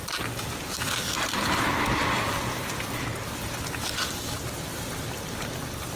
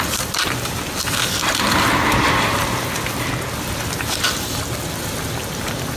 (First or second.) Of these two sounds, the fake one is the second